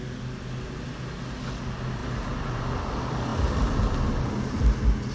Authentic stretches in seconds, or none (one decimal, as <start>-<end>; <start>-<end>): 0.0-2.0; 2.6-5.1